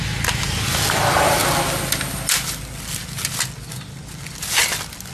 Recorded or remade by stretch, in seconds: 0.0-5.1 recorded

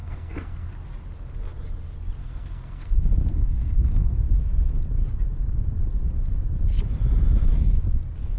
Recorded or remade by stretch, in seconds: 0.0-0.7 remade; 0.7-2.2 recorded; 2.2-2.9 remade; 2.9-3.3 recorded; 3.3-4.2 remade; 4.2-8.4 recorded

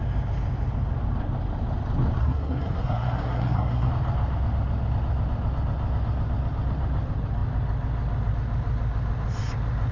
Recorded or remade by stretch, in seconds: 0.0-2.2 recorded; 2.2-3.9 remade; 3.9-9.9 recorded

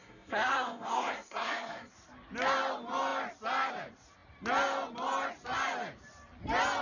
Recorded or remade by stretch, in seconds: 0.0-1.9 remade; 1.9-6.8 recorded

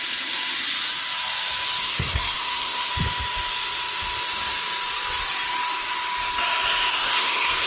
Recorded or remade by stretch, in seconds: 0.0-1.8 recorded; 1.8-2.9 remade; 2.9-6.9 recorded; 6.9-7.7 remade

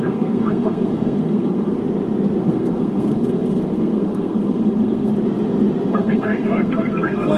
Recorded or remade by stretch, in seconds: 0.0-1.8 remade; 1.8-2.4 recorded; 2.4-5.1 remade; 5.1-5.9 recorded; 5.9-7.4 remade